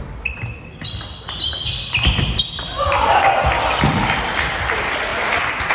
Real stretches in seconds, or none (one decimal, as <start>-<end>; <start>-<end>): 0.0-5.7